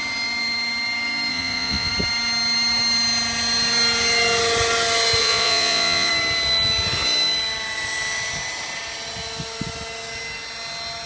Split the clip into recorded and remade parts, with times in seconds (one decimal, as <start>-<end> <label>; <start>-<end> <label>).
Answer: 0.0-1.3 recorded; 1.3-1.9 remade; 1.9-5.2 recorded; 5.2-6.1 remade; 6.1-11.1 recorded